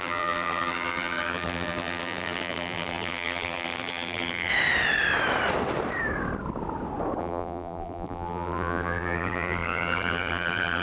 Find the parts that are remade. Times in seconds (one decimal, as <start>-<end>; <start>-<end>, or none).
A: 0.0-4.5; 7.2-10.8